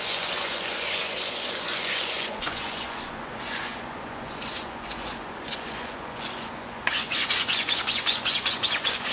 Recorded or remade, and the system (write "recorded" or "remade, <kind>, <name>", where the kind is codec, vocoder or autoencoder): remade, vocoder, Vocos